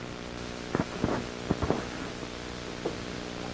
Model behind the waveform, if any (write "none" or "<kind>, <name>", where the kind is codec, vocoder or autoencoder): none